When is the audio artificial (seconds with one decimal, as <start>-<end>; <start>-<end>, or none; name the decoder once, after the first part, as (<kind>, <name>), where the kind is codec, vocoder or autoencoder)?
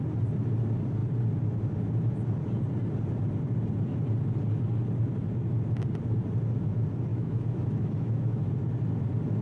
7.1-8.5 (autoencoder, DAC-VAE)